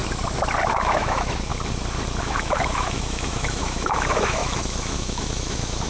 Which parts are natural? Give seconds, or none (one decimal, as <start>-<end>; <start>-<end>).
0.0-0.7; 1.5-2.2